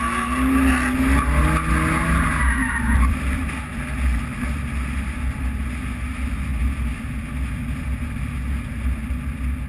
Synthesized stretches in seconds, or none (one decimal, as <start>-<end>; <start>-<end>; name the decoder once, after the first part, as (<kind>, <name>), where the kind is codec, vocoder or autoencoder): 2.6-3.7 (vocoder, BigVGAN v2); 4.3-5.7